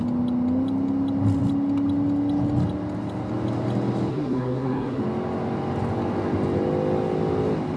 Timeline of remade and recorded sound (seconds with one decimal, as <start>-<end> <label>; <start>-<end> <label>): 0.0-4.1 recorded; 4.1-5.0 remade; 5.0-7.8 recorded